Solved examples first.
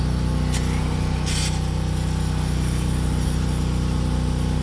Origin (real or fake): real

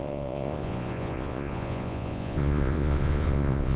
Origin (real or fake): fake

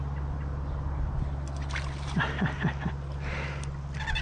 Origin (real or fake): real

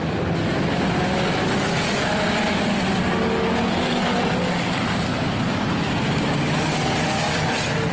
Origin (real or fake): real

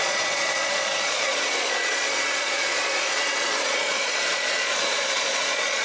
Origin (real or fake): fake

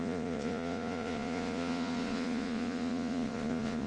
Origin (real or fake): fake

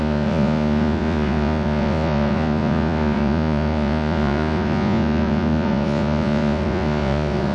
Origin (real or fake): fake